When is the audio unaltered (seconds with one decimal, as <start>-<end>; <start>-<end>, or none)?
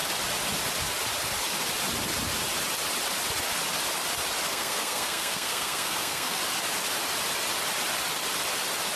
0.0-4.5; 6.4-9.0